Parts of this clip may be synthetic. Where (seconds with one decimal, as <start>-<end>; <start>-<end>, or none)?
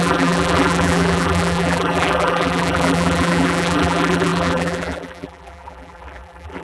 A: 0.0-6.6